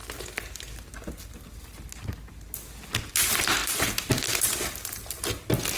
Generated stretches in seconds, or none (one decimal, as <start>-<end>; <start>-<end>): 3.1-3.6